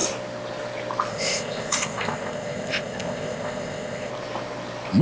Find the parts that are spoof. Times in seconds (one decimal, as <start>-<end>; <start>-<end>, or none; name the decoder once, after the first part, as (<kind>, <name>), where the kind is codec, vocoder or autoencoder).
1.1-4.1 (codec, ZipCodec)